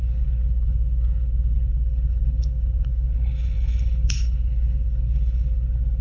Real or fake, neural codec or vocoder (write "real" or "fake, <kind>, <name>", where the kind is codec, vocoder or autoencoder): fake, codec, HILCodec